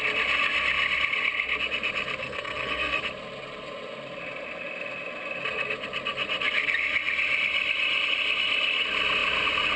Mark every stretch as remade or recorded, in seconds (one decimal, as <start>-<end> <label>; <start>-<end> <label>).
0.0-2.2 recorded; 2.2-3.0 remade; 3.0-9.8 recorded